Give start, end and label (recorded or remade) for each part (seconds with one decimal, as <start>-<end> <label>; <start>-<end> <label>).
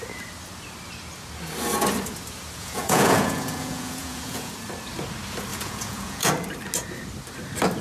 0.0-2.6 recorded; 2.6-4.5 remade; 4.5-5.5 recorded; 5.5-6.3 remade; 6.3-7.8 recorded